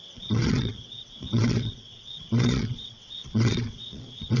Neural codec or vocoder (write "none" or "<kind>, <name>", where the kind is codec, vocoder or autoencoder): vocoder, WaveNeXt